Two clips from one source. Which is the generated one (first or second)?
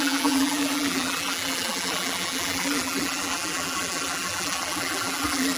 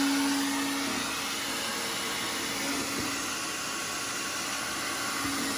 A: first